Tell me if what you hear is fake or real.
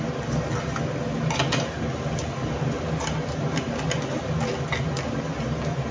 real